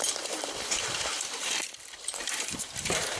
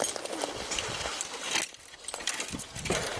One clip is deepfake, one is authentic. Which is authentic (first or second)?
second